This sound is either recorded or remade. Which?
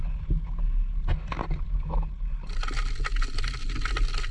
recorded